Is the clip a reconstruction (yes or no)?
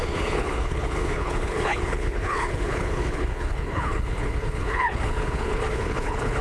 yes